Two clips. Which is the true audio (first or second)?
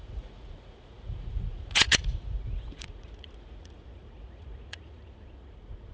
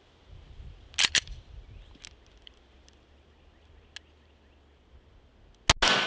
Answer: second